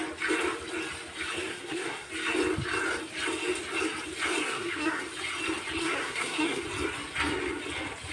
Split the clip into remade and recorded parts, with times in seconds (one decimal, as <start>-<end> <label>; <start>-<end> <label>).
0.0-1.5 recorded; 1.5-2.1 remade; 2.1-4.4 recorded; 4.4-5.0 remade; 5.0-5.8 recorded; 5.8-6.6 remade; 6.6-8.1 recorded